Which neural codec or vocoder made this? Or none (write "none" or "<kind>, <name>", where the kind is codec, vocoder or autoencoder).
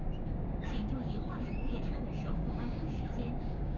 codec, DAC